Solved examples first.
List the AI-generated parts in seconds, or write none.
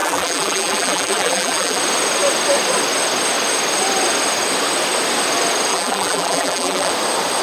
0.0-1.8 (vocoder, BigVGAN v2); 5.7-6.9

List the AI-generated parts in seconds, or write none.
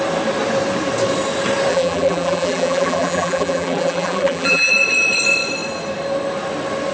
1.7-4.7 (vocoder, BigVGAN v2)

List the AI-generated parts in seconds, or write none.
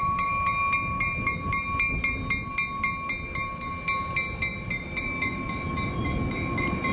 none